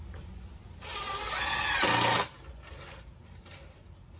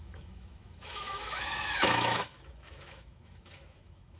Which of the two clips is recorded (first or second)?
first